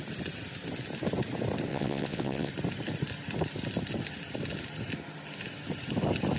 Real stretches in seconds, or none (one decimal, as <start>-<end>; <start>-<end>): 0.0-1.7; 2.5-6.4